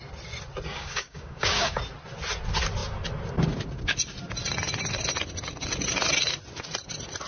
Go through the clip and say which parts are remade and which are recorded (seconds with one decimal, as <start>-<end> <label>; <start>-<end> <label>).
0.0-0.7 recorded; 0.7-1.8 remade; 1.8-7.3 recorded